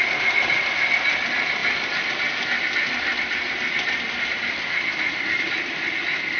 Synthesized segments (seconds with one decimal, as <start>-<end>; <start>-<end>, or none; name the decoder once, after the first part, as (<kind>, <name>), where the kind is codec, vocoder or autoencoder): none